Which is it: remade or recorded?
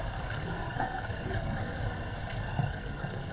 remade